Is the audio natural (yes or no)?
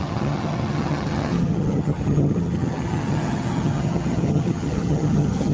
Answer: no